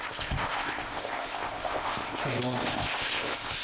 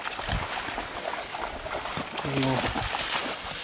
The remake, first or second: first